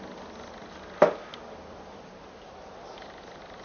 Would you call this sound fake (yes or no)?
no